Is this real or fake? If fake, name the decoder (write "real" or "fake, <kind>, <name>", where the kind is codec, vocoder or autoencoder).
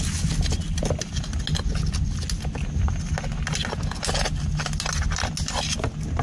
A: real